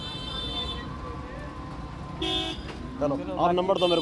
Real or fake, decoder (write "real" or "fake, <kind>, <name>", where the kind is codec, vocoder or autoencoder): real